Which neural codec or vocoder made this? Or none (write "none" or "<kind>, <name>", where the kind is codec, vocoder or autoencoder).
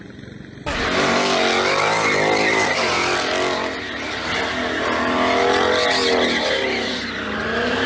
none